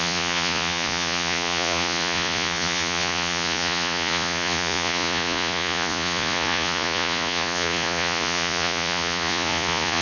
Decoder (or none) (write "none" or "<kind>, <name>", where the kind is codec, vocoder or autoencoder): vocoder, Vocos